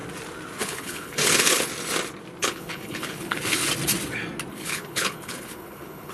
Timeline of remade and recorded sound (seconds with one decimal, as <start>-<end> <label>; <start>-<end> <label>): 0.0-0.6 recorded; 0.6-1.7 remade; 1.7-2.4 recorded; 2.4-3.6 remade; 3.6-4.5 recorded; 4.5-6.1 remade